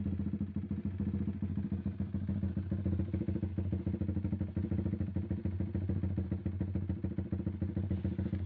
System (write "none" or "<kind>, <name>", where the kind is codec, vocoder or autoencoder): none